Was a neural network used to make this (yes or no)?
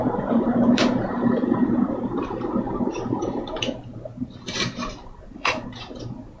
yes